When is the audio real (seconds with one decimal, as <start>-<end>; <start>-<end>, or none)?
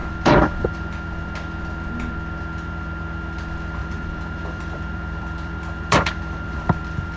0.7-3.8